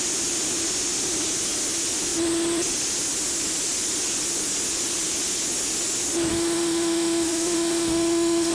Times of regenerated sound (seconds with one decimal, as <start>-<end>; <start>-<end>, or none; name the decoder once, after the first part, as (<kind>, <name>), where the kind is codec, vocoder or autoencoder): 6.3-8.5 (autoencoder, DAC-VAE)